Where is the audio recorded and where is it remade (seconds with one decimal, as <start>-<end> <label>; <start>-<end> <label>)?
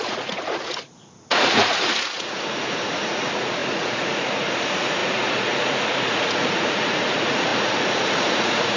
0.0-8.8 remade